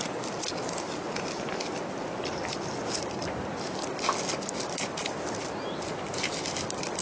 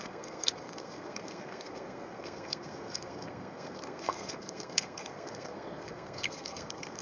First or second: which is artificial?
second